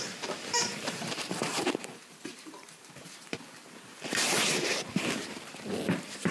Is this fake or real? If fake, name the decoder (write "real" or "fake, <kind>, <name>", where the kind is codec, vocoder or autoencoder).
fake, vocoder, BigVGAN v2